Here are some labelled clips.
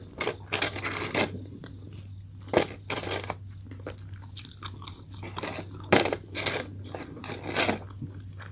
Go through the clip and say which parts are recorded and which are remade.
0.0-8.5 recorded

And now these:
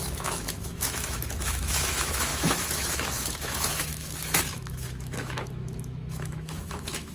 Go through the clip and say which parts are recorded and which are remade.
0.0-7.1 remade